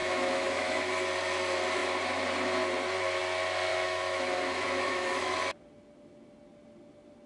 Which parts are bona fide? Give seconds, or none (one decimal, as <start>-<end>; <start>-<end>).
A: 0.9-3.7; 5.4-7.3